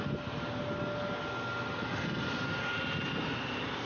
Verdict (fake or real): real